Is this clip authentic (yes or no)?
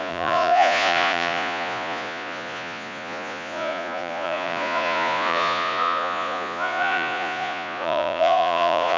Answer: no